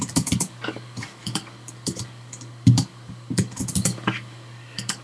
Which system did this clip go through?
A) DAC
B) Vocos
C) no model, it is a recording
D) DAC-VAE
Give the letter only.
A